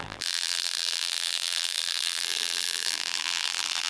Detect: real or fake fake